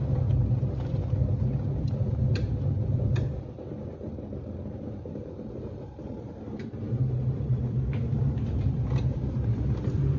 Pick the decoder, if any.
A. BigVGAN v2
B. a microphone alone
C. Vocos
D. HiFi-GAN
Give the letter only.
A